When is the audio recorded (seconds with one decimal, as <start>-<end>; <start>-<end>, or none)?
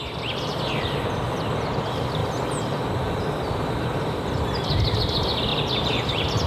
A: 5.5-6.5